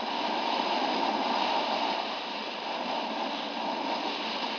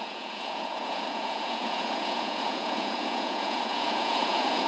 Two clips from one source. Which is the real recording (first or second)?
first